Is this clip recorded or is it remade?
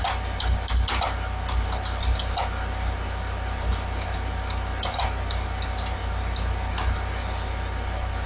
recorded